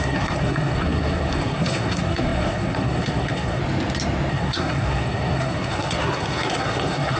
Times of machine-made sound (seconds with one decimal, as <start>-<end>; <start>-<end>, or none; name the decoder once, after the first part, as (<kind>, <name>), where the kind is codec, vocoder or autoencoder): 0.0-3.6 (codec, SNAC); 4.3-7.2